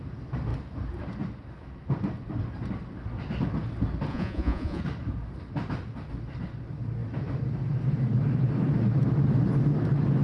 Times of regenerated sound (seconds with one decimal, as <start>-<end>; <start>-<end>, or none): 4.1-4.8